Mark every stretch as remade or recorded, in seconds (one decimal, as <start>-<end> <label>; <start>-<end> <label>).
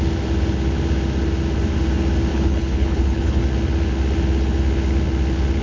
0.0-2.3 recorded; 2.3-3.4 remade; 3.4-5.6 recorded